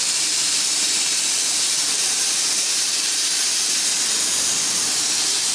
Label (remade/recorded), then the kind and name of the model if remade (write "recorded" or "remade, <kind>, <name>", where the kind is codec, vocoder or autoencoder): remade, vocoder, BigVGAN v2